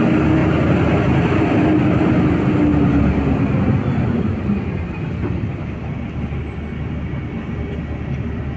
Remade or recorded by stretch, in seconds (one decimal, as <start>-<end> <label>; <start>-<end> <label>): 0.0-0.4 recorded; 0.4-1.4 remade; 1.4-8.6 recorded